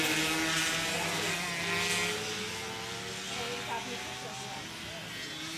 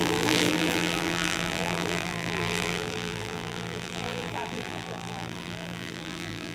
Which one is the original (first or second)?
first